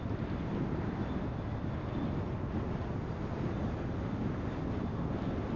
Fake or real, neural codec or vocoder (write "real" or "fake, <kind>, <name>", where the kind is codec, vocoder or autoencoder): real